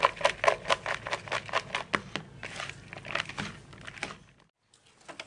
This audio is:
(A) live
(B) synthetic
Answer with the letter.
A